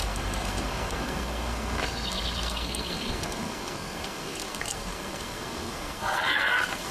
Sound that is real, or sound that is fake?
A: fake